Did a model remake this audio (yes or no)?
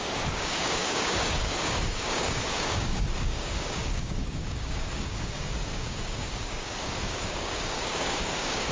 yes